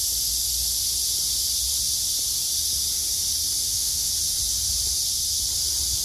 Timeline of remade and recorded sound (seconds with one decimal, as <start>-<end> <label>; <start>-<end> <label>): 0.0-3.6 recorded; 3.6-4.1 remade; 4.1-6.0 recorded